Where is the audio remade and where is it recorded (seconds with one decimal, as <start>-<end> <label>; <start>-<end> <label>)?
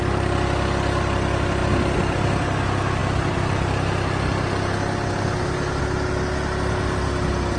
0.0-7.6 recorded